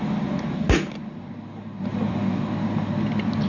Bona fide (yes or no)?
yes